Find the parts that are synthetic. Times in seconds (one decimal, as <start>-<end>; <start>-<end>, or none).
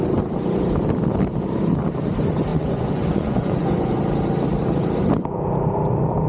2.5-4.0